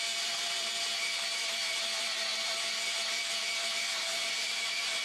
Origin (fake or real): fake